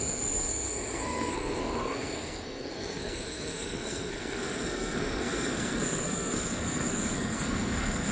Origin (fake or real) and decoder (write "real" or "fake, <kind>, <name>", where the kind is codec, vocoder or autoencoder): fake, codec, SNAC